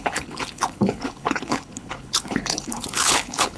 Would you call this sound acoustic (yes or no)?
no